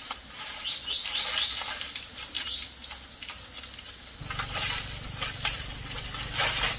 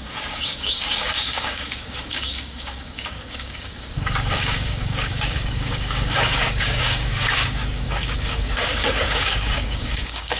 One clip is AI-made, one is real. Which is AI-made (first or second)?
second